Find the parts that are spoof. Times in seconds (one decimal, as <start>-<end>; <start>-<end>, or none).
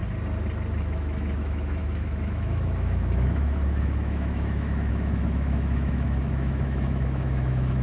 0.8-7.8